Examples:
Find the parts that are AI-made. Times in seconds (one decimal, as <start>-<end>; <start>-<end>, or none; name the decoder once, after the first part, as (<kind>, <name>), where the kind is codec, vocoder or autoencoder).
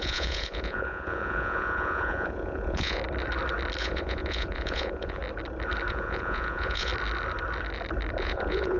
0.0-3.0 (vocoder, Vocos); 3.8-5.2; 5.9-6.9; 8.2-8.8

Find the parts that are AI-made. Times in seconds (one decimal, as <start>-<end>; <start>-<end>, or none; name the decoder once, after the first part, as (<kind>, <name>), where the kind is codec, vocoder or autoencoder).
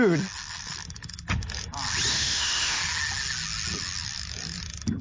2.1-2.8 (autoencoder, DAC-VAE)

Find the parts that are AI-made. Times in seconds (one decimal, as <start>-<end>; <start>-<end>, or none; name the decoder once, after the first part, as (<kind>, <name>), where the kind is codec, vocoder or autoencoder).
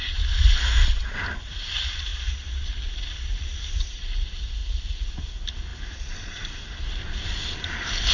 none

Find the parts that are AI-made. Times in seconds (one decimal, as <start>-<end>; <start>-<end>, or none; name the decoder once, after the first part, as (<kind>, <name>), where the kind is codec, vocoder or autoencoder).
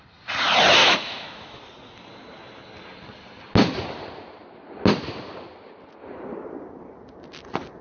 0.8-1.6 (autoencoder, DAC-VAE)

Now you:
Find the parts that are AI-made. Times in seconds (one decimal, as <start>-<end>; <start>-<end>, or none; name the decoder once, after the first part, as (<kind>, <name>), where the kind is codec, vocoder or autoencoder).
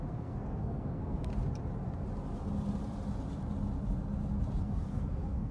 0.0-1.3 (codec, SNAC); 4.6-5.5